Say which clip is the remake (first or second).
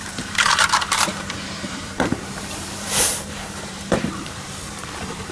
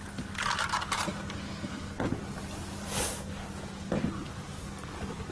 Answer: first